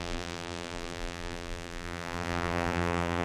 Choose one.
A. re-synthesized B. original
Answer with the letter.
A